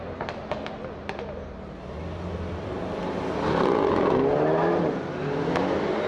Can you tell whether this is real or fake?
real